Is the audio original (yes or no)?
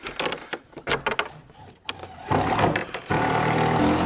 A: yes